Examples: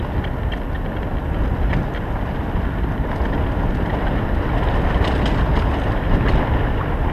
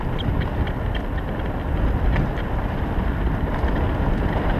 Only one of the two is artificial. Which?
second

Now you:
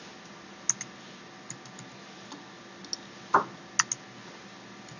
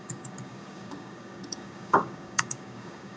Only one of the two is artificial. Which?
second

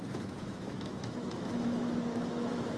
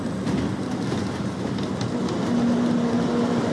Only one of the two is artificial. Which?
first